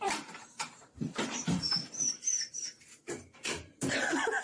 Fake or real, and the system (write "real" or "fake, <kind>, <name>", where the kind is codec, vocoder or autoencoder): fake, vocoder, BigVGAN v2